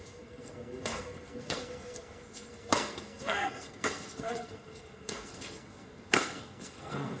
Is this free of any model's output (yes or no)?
no